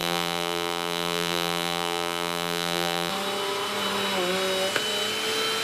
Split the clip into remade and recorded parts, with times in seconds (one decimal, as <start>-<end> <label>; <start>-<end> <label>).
0.0-3.1 remade; 3.1-5.6 recorded